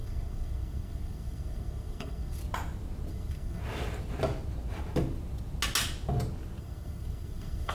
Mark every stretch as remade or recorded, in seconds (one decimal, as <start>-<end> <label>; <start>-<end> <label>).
0.0-2.4 remade; 2.4-3.1 recorded; 3.1-3.6 remade; 3.6-6.6 recorded; 6.6-7.7 remade